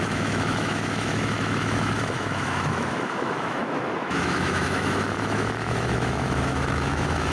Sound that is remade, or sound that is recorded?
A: remade